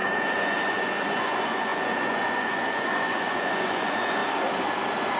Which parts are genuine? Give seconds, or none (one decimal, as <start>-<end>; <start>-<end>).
4.2-5.2